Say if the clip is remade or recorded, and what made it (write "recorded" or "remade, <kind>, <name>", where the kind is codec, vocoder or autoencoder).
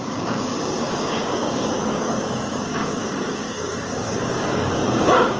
remade, codec, DAC